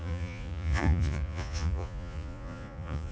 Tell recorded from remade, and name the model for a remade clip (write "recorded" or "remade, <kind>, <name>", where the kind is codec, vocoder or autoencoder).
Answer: remade, vocoder, Vocos